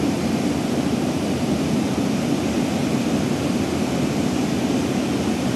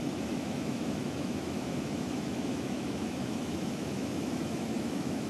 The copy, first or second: second